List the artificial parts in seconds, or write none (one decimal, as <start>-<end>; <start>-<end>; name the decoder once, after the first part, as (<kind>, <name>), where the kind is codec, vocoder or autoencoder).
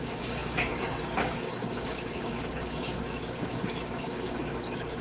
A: 0.0-5.0 (codec, DAC)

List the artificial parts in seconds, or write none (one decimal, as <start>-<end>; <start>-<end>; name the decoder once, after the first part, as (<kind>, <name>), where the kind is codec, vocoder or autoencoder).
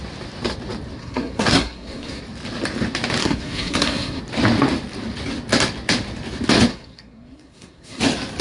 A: 1.0-2.2 (codec, SNAC); 3.2-4.2; 6.7-8.0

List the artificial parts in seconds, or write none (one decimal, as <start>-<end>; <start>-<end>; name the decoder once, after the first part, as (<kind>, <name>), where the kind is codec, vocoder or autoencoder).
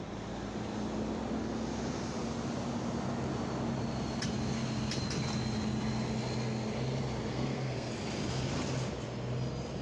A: 7.3-7.9 (codec, SNAC)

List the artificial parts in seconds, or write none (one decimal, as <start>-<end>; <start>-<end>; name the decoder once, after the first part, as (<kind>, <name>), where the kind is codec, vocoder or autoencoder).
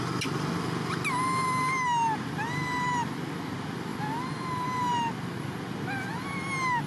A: none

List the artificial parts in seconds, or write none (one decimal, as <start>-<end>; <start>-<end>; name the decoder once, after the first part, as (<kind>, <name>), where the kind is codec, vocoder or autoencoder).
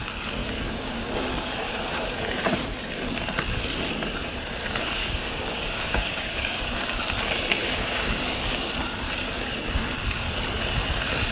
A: 0.4-1.1 (codec, DAC); 4.8-6.9; 7.6-8.7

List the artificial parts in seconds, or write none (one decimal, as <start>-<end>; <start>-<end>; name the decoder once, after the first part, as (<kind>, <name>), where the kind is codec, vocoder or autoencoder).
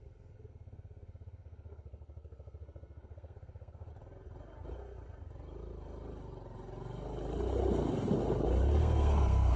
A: 0.0-3.9 (codec, SNAC); 8.8-9.6